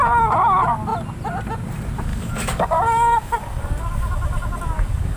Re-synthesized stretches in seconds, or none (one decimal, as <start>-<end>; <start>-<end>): 2.1-5.2